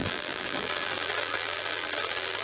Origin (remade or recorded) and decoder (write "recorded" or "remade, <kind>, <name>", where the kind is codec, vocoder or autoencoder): remade, vocoder, BigVGAN v2